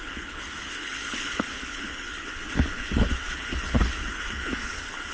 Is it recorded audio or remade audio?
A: remade